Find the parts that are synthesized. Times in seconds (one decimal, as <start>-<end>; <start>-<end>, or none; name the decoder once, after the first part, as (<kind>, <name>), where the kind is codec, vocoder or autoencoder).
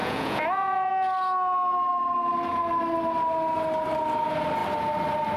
0.0-0.9 (vocoder, Vocos)